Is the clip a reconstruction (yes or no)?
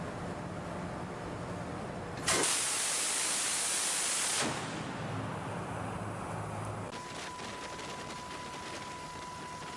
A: no